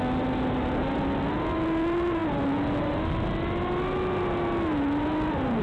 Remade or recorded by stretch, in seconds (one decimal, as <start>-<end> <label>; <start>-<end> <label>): 0.0-5.6 recorded